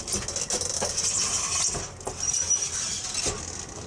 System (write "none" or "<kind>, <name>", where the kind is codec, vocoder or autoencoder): none